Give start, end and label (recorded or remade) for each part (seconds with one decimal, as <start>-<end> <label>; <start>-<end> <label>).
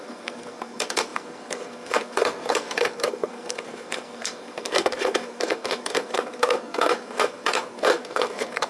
0.0-8.7 remade